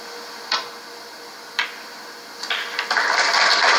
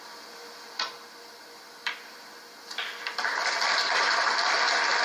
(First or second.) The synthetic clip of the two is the second